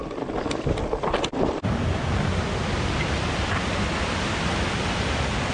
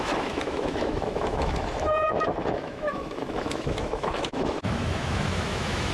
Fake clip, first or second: second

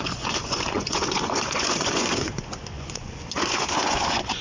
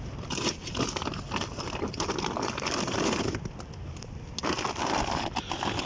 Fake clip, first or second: first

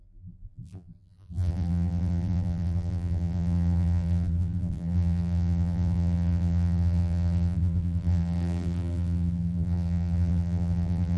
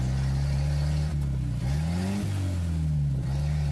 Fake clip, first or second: first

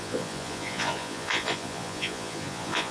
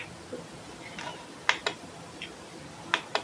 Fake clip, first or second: first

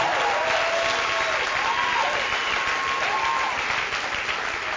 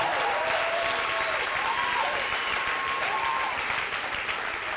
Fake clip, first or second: second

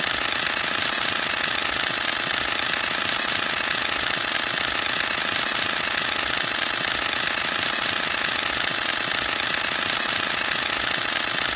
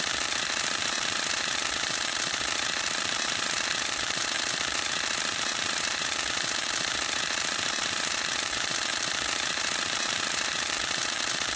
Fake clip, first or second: second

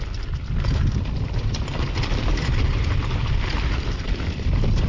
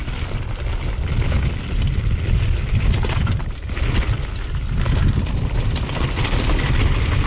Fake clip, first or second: first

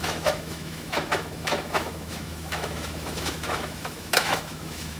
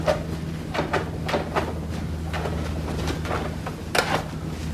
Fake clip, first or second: first